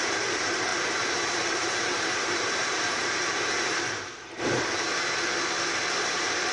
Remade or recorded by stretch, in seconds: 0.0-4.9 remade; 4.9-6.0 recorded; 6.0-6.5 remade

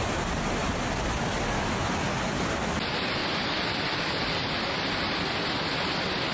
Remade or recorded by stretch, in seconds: 0.0-0.6 recorded; 0.6-1.2 remade; 1.2-3.2 recorded; 3.2-4.9 remade; 4.9-6.3 recorded

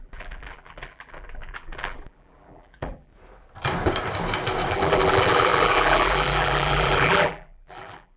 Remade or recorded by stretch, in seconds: 0.0-3.1 remade; 3.1-4.7 recorded; 4.7-8.2 remade